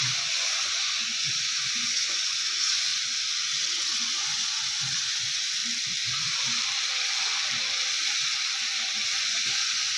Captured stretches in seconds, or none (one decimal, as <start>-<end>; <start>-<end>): 2.9-3.8; 5.6-9.2